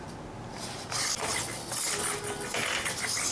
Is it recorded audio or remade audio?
recorded